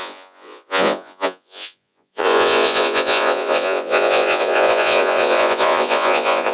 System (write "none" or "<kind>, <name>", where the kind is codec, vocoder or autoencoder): vocoder, Vocos